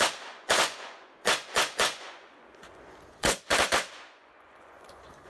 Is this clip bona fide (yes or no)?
no